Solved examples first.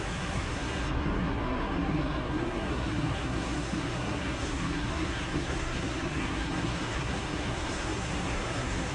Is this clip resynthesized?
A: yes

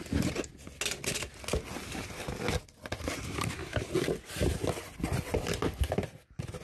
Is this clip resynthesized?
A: no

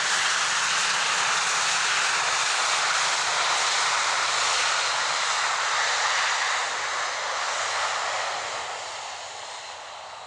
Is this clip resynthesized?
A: no